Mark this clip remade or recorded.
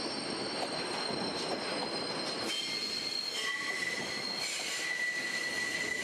recorded